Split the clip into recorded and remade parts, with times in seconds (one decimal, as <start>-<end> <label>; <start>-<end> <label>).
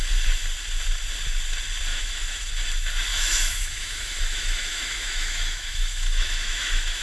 0.0-1.9 recorded; 1.9-2.5 remade; 2.5-3.1 recorded; 3.1-7.0 remade